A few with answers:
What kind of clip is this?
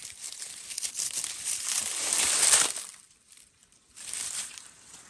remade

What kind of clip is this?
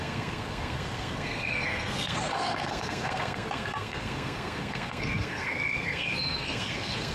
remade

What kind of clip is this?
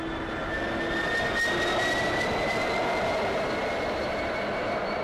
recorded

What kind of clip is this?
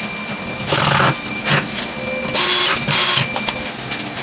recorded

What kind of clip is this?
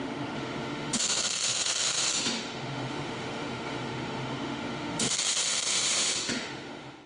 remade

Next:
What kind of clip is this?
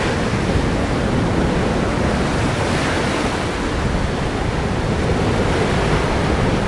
recorded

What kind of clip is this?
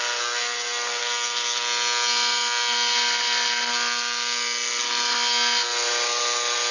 recorded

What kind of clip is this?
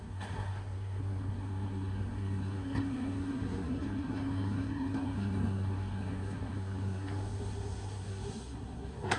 remade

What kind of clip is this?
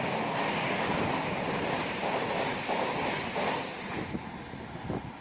recorded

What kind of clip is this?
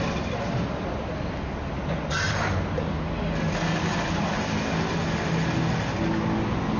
recorded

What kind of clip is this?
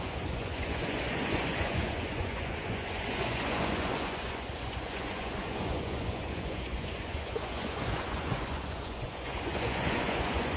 remade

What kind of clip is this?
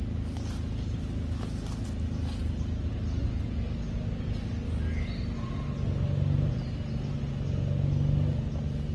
recorded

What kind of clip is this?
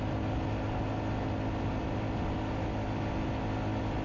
recorded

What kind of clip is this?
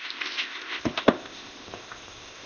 remade